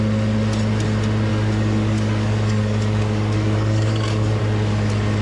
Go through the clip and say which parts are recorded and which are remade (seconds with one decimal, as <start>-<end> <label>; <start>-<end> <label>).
0.0-1.3 recorded; 1.3-4.4 remade; 4.4-5.2 recorded

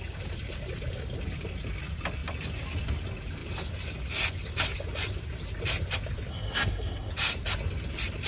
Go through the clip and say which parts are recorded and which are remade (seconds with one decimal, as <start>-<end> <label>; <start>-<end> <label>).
0.0-6.3 recorded; 6.3-7.1 remade; 7.1-8.3 recorded

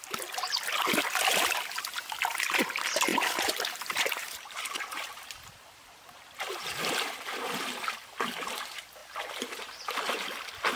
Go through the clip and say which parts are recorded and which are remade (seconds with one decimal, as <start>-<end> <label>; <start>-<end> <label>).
0.0-3.1 recorded; 3.1-5.3 remade; 5.3-10.8 recorded

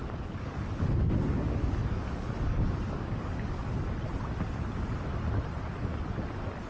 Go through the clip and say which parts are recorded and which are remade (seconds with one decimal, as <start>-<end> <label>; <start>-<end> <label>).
0.0-3.6 remade; 3.6-6.7 recorded